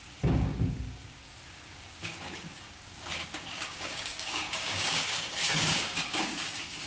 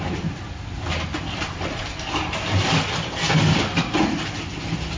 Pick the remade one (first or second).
first